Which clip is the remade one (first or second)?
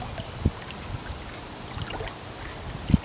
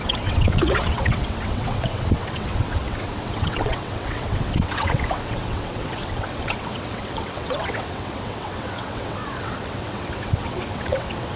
second